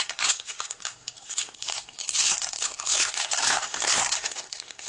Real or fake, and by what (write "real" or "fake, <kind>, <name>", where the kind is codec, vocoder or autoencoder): fake, codec, SNAC